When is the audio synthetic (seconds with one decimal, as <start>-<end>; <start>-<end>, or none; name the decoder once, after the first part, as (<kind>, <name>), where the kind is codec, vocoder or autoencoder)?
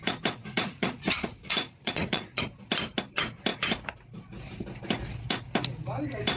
0.4-2.4 (vocoder, Vocos)